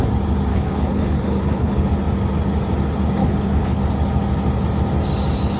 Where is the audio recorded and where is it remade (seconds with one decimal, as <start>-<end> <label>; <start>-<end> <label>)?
0.0-0.5 recorded; 0.5-1.9 remade; 1.9-3.2 recorded; 3.2-3.8 remade; 3.8-5.6 recorded